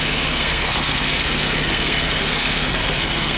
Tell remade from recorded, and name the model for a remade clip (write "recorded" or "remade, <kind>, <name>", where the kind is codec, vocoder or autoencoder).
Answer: remade, codec, SNAC